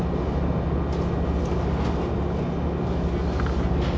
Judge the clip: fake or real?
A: real